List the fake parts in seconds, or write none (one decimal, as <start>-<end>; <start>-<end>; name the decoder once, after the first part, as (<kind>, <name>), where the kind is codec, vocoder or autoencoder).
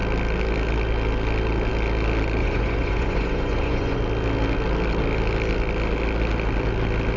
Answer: 2.4-4.0 (vocoder, Vocos)